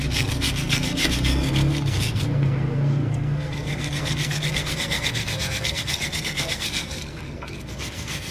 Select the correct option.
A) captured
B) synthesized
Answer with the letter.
B